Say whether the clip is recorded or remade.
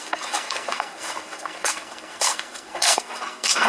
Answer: remade